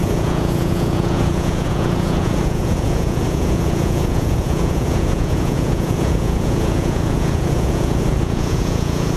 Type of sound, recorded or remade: remade